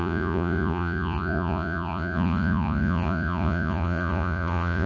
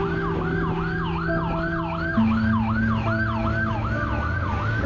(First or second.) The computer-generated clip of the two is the first